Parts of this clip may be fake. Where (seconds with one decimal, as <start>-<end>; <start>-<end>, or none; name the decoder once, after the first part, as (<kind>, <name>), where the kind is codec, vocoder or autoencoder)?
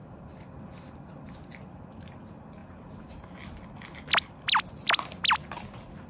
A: none